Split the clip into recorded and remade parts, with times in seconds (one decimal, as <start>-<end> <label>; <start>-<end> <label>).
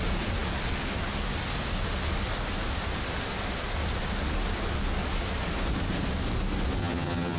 0.0-6.8 recorded; 6.8-7.4 remade